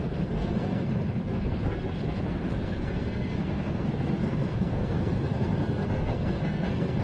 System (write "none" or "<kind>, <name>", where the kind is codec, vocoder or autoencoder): codec, SNAC